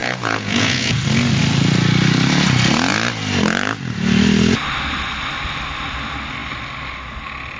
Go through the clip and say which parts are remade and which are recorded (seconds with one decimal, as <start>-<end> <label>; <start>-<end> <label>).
0.0-1.0 remade; 1.0-7.6 recorded